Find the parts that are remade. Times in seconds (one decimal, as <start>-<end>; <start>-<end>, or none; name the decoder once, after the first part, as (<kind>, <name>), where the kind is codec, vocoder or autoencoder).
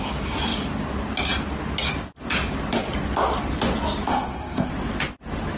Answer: 4.1-4.7 (codec, SNAC)